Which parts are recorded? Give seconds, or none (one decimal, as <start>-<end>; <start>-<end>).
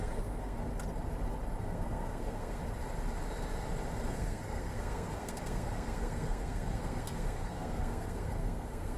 0.7-1.6; 2.6-4.1